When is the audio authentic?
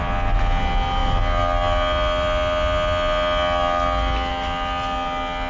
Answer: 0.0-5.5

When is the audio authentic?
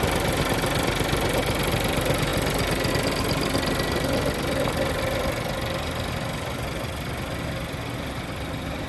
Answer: 0.0-8.9